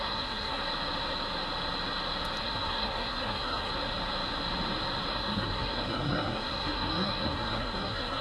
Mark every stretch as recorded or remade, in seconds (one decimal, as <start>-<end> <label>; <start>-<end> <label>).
0.0-0.6 remade; 0.6-2.4 recorded; 2.4-3.7 remade; 3.7-5.1 recorded; 5.1-8.2 remade